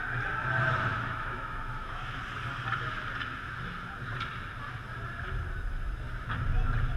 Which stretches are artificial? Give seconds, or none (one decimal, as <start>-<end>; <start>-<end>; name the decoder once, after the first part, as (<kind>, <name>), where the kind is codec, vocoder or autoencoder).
0.9-2.2 (autoencoder, DAC-VAE)